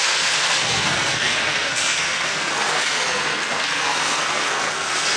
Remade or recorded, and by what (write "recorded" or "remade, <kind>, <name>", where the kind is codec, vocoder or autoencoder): remade, codec, SNAC